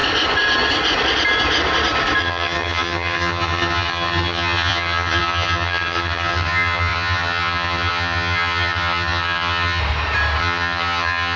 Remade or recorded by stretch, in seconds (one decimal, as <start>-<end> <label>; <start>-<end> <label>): 0.0-2.2 recorded; 2.2-9.8 remade; 9.8-10.4 recorded; 10.4-11.4 remade